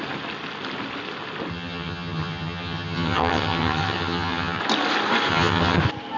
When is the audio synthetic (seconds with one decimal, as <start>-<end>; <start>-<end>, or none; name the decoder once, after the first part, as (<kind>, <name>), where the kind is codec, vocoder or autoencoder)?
1.5-4.6 (vocoder, HiFi-GAN); 5.3-5.8